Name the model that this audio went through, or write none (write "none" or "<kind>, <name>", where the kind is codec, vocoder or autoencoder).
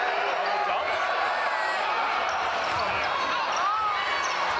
none